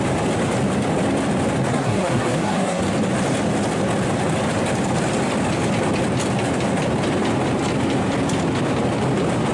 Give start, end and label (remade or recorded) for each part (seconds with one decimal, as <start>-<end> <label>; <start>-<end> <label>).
0.0-1.7 recorded; 1.7-2.8 remade; 2.8-9.5 recorded